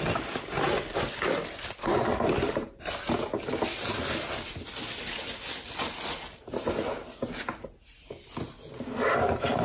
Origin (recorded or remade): recorded